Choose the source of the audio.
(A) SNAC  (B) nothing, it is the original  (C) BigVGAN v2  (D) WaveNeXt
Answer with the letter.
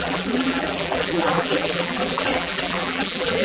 C